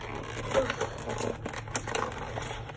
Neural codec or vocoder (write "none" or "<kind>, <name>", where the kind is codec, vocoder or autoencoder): none